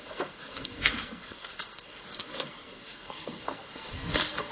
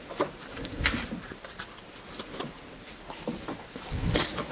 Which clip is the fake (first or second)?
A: first